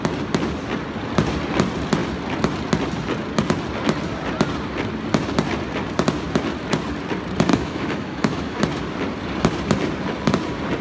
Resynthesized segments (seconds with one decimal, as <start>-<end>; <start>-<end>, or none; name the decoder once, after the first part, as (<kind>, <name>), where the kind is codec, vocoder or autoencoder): 7.5-8.6 (autoencoder, DAC-VAE)